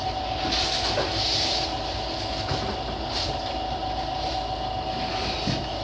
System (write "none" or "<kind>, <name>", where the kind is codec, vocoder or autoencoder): none